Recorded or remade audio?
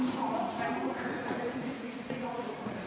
remade